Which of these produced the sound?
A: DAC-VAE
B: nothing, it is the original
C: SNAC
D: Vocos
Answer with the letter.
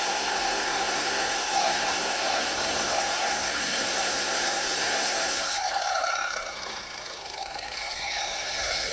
C